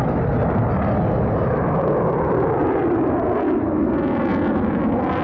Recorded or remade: recorded